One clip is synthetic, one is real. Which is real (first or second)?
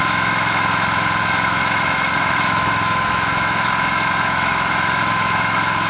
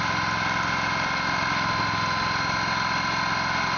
second